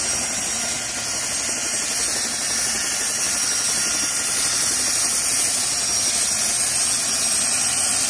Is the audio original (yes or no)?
yes